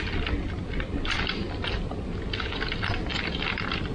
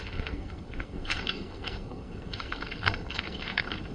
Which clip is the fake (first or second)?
second